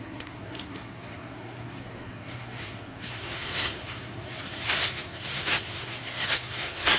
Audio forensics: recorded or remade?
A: remade